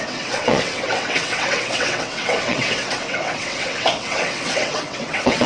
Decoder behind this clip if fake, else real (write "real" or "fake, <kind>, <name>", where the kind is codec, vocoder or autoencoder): fake, vocoder, WaveNeXt